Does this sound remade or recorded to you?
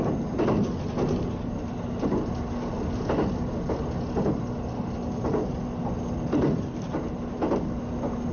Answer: recorded